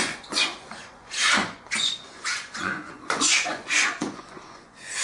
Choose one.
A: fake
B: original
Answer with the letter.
A